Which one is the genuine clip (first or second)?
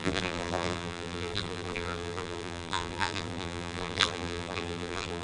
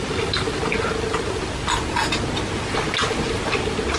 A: second